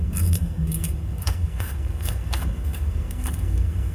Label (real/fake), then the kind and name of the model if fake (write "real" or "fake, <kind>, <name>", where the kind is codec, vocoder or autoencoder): fake, codec, SNAC